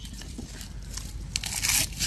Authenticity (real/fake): real